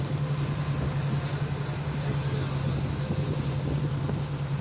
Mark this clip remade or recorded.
recorded